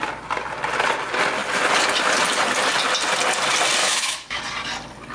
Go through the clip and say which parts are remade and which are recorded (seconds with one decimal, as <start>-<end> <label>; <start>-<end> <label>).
0.0-3.8 recorded; 3.8-4.4 remade; 4.4-5.1 recorded